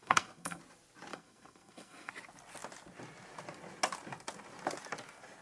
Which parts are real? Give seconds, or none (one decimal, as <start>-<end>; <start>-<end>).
0.6-1.1; 2.1-5.4